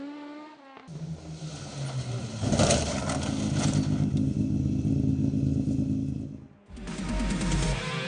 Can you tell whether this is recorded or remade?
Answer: recorded